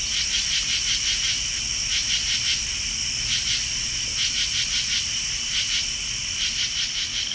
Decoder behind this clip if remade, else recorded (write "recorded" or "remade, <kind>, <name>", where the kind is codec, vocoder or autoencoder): recorded